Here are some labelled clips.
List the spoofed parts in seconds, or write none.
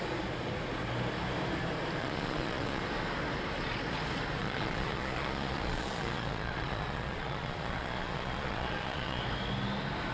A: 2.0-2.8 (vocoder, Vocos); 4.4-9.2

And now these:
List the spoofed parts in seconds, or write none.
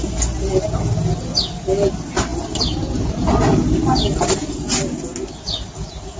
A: none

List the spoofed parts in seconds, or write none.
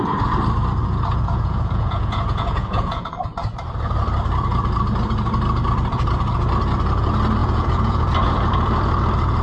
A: 0.8-3.1 (vocoder, Vocos); 7.4-8.0